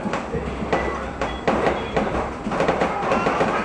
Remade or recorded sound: recorded